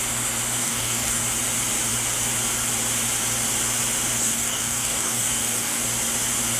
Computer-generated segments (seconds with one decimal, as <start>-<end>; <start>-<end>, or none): 0.6-1.2; 4.2-5.8